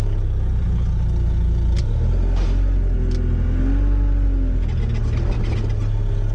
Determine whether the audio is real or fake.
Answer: real